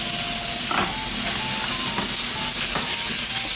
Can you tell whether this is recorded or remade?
recorded